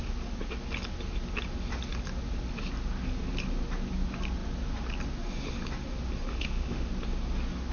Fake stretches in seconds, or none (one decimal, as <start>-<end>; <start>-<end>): 6.3-6.9